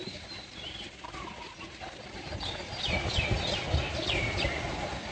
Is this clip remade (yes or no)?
no